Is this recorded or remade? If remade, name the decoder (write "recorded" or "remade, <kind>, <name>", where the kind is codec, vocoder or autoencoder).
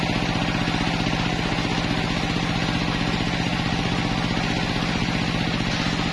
recorded